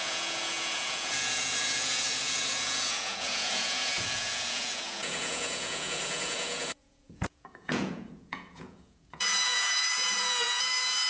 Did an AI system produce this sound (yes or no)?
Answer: yes